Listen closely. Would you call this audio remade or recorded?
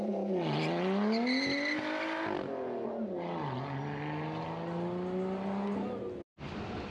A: recorded